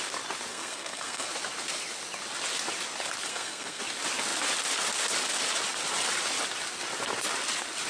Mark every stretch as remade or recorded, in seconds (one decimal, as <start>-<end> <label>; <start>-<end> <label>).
0.0-0.5 recorded; 0.5-1.3 remade; 1.3-3.3 recorded; 3.3-3.8 remade; 3.8-7.9 recorded